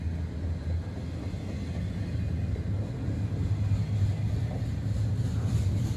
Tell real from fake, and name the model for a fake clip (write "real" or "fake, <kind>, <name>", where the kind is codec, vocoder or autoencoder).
real